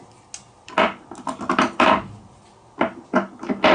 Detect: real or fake real